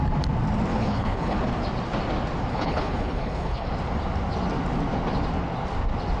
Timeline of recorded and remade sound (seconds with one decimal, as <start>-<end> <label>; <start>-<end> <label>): 0.0-0.7 recorded; 0.7-1.4 remade; 1.4-2.5 recorded; 2.5-3.7 remade; 3.7-6.2 recorded